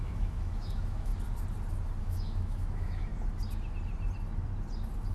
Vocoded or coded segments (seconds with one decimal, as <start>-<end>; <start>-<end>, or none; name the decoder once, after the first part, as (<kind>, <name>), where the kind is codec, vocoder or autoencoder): 0.0-1.1 (autoencoder, DAC-VAE); 2.0-3.1